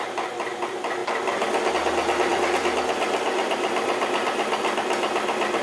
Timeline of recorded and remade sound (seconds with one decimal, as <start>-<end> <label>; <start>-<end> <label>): 0.0-5.6 recorded